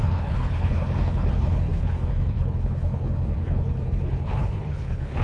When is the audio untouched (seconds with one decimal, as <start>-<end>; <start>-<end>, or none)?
none